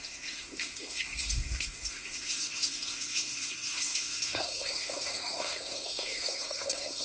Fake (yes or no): yes